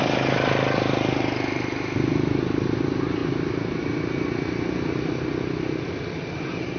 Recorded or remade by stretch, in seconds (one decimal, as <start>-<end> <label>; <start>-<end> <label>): 0.0-6.8 recorded